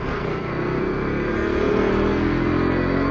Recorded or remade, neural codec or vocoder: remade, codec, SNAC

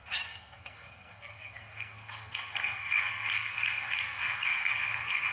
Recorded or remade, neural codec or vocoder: remade, codec, SNAC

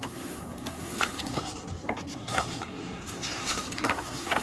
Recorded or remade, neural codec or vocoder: remade, codec, SNAC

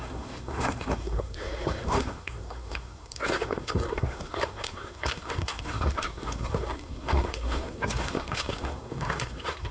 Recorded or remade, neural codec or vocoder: remade, codec, SNAC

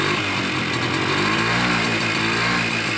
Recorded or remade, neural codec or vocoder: recorded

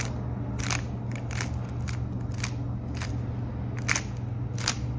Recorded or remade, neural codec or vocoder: recorded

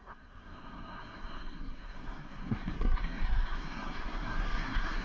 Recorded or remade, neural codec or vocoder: remade, codec, SNAC